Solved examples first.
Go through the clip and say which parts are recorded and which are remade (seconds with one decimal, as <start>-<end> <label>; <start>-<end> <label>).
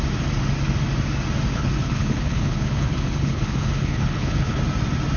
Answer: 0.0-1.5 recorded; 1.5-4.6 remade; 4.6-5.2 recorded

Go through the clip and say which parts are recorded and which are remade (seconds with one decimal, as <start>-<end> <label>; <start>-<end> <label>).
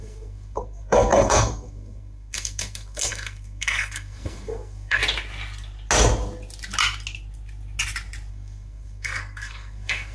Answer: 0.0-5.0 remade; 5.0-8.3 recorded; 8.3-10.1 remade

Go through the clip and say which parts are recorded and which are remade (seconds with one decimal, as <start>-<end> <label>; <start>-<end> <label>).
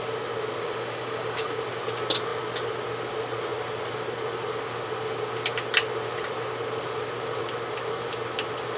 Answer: 0.0-0.6 recorded; 0.6-1.6 remade; 1.6-8.8 recorded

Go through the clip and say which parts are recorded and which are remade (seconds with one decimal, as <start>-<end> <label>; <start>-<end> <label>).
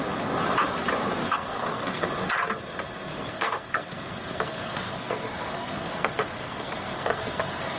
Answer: 0.0-1.2 recorded; 1.2-2.1 remade; 2.1-3.1 recorded; 3.1-7.8 remade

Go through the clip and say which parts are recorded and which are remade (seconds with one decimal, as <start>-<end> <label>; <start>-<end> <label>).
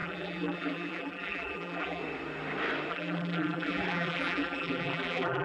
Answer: 0.0-2.0 remade; 2.0-2.9 recorded; 2.9-5.4 remade